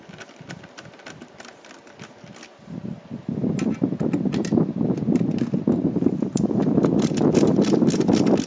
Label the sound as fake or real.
real